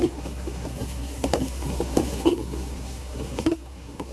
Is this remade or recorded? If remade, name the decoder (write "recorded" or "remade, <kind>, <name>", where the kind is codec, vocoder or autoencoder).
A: remade, codec, SNAC